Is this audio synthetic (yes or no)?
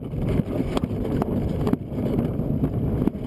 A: no